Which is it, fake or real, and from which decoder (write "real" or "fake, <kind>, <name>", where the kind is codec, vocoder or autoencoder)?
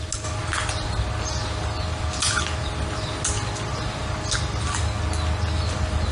real